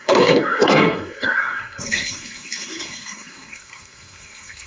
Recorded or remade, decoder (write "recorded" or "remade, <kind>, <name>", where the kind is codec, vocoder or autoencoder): remade, codec, SNAC